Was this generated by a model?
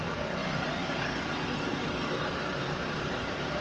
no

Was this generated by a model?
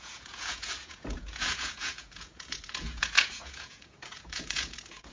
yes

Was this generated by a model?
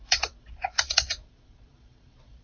yes